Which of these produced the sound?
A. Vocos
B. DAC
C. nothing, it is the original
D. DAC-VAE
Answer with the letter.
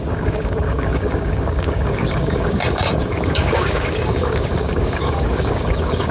B